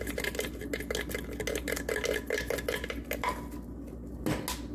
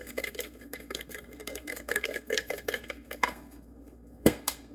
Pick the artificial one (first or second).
second